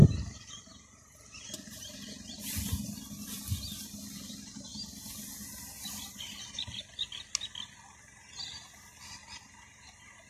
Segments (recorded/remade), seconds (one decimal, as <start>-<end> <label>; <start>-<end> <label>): 0.0-2.4 remade; 2.4-10.3 recorded